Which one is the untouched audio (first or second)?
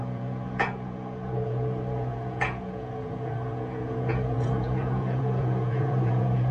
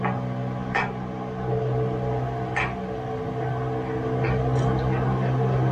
second